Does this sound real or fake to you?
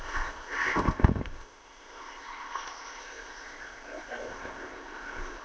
fake